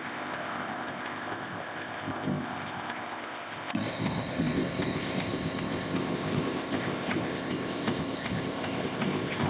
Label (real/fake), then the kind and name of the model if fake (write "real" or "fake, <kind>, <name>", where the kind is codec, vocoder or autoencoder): fake, codec, ZipCodec